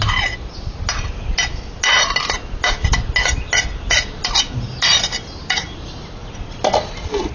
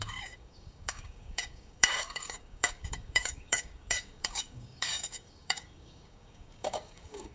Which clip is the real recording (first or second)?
first